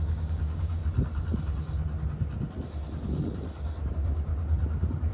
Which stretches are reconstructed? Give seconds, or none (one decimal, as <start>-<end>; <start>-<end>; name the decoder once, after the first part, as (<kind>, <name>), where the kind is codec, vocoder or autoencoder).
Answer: 0.0-0.8 (codec, DAC); 3.9-4.3